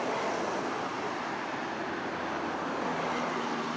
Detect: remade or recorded recorded